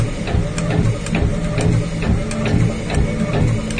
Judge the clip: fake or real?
real